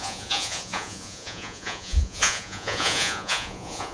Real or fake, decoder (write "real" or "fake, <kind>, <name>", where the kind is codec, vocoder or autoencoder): fake, vocoder, Vocos